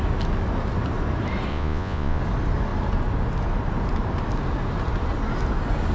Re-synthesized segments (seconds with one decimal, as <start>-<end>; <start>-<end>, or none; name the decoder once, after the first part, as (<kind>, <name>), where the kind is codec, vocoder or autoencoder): 1.5-2.2 (vocoder, Vocos)